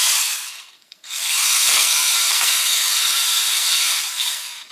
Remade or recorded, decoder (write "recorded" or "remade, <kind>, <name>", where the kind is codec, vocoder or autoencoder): remade, codec, SNAC